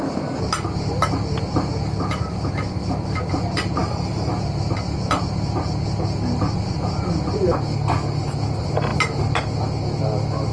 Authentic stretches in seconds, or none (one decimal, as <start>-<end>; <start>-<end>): 0.0-3.8; 4.3-10.5

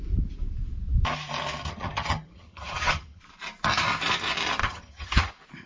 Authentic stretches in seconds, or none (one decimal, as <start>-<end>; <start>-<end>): 0.0-1.6; 3.2-4.6; 5.3-5.7

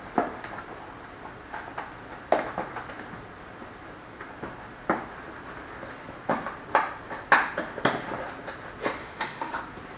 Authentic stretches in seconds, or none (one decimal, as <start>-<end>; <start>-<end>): 0.0-9.0; 9.6-10.0